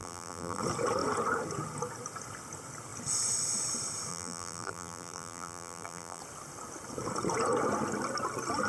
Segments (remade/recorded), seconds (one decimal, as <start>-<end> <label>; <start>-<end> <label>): 0.0-0.6 remade; 0.6-4.1 recorded; 4.1-6.2 remade; 6.2-8.7 recorded